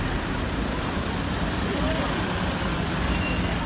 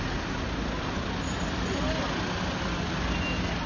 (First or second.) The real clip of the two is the second